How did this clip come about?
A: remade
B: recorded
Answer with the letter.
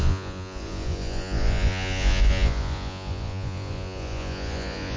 A